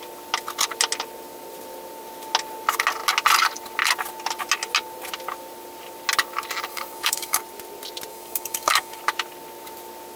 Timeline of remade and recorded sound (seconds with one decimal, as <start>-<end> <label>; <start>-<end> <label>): 0.0-6.7 recorded; 6.7-7.4 remade; 7.4-8.1 recorded; 8.1-9.0 remade; 9.0-10.2 recorded